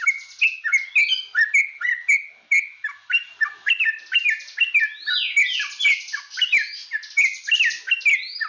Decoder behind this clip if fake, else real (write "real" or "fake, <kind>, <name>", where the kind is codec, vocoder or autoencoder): real